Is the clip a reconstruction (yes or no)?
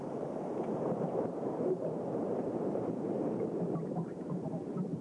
yes